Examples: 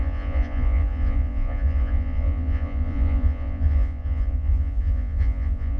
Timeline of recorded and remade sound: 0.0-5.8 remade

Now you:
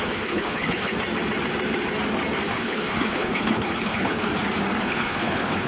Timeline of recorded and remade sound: 0.0-0.9 remade; 0.9-2.5 recorded; 2.5-4.3 remade; 4.3-4.8 recorded; 4.8-5.7 remade

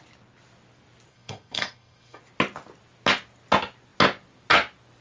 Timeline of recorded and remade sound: 0.0-1.1 recorded; 1.1-2.2 remade; 2.2-5.0 recorded